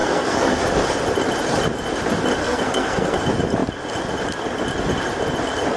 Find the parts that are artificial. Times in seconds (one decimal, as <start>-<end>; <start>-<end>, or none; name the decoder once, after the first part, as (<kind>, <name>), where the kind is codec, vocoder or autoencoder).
0.0-0.6 (codec, SNAC); 2.4-3.2